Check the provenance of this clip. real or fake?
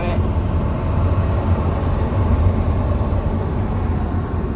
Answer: real